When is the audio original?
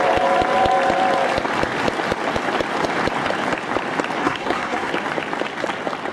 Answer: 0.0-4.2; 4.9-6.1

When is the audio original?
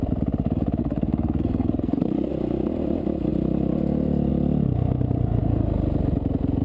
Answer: 0.0-0.8; 2.3-6.6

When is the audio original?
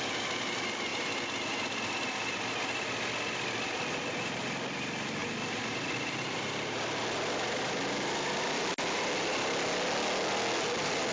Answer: 0.0-11.1